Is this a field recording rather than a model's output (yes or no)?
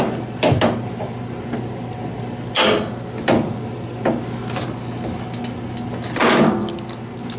yes